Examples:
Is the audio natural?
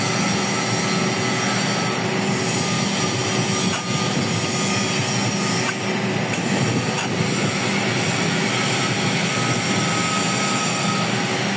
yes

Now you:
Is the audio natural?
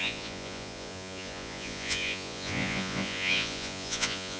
no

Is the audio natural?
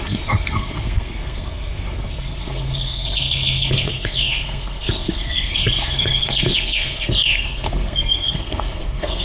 no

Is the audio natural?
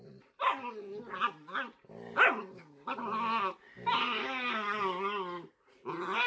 yes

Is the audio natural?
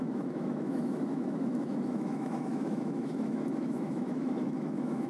no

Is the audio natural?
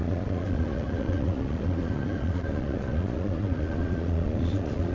no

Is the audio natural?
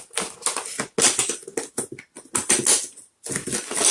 yes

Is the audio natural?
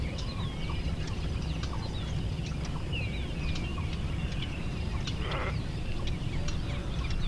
yes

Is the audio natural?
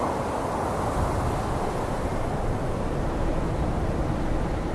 yes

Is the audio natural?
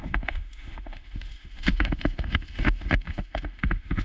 no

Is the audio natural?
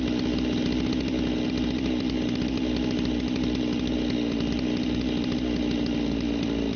yes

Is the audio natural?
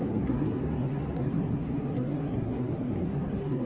no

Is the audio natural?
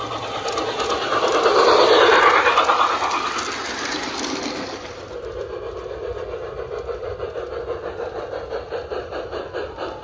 yes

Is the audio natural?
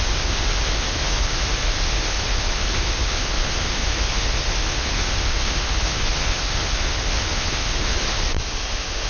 no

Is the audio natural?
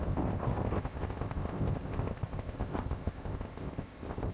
no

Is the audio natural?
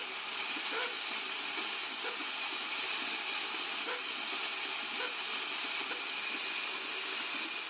yes